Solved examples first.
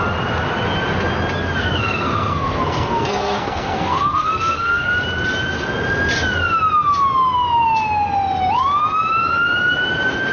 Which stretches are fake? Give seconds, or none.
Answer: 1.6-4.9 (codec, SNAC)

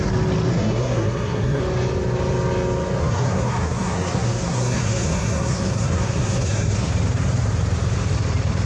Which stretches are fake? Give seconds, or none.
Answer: 0.5-1.6 (codec, SNAC); 3.0-6.9

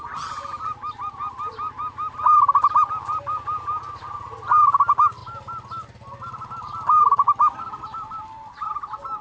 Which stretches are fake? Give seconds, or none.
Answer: none

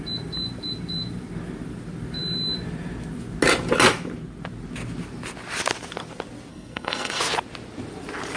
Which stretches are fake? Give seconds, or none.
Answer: 6.5-7.2 (codec, SNAC)

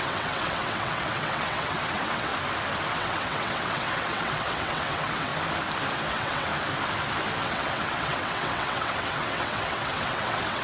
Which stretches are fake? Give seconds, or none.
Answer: 0.0-2.3 (vocoder, WaveNeXt); 2.9-5.3; 6.1-6.5; 7.4-10.6

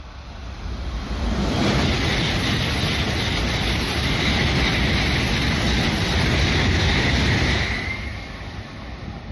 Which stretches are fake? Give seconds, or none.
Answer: none

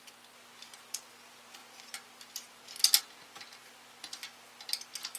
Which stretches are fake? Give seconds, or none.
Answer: none

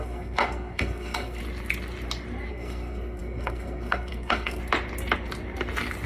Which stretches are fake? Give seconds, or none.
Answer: 0.0-1.4 (codec, SNAC); 2.5-4.6